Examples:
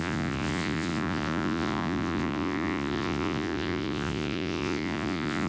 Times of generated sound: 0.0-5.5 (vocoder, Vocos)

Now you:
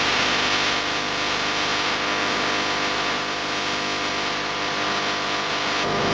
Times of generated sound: none

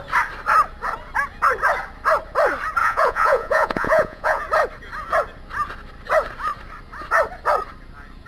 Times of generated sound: 2.8-4.4 (vocoder, Vocos)

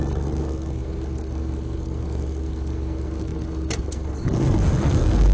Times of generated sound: 0.0-5.3 (codec, SNAC)